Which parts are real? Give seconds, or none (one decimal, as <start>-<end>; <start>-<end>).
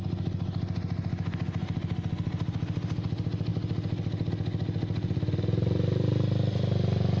0.0-7.2